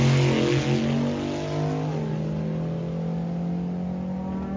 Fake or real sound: real